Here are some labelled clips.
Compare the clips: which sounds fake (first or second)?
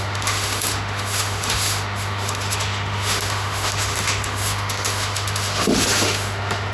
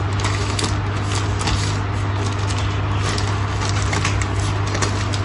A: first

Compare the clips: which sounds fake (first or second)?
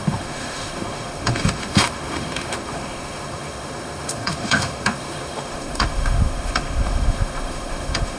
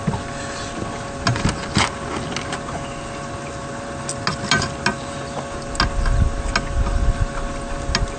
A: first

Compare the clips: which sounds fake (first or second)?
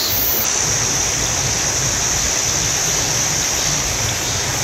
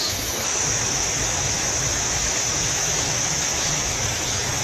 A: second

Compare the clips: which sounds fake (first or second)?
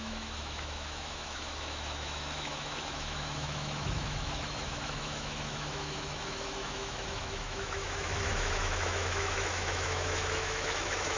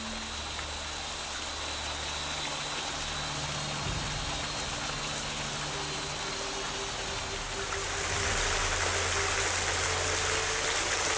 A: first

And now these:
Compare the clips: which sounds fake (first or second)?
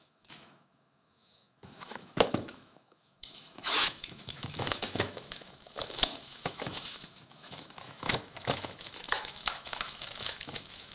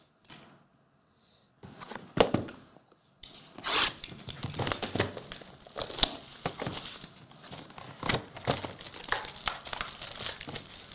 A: first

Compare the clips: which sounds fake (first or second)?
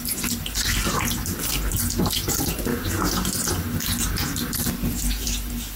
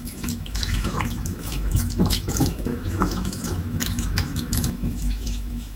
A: second